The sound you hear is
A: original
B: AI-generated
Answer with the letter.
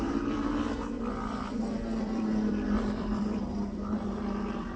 B